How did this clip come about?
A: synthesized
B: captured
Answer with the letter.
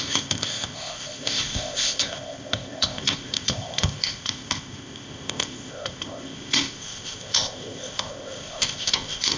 A